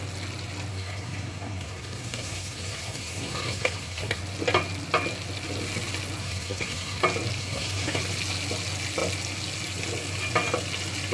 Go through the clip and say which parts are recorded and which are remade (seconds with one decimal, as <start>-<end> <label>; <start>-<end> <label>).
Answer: 0.0-0.7 recorded; 0.7-4.2 remade; 4.2-6.2 recorded; 6.2-7.0 remade; 7.0-7.4 recorded; 7.4-8.0 remade; 8.0-11.1 recorded